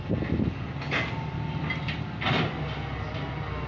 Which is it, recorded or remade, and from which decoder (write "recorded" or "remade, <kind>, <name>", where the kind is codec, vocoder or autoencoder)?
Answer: recorded